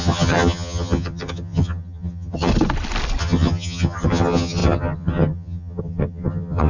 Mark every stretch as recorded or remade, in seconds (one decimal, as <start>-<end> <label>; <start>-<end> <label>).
0.0-2.5 remade; 2.5-3.2 recorded; 3.2-6.7 remade